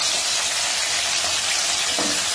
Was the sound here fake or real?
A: real